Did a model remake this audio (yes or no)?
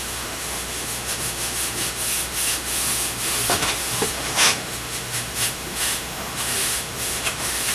yes